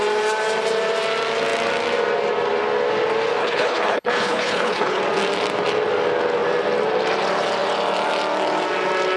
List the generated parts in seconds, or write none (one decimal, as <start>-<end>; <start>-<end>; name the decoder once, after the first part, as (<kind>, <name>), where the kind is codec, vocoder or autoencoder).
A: 3.4-5.0 (codec, HILCodec)